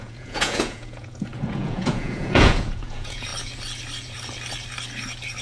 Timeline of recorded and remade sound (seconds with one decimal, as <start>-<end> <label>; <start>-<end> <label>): 0.0-3.3 remade; 3.3-5.4 recorded